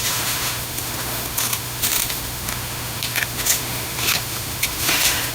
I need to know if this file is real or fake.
fake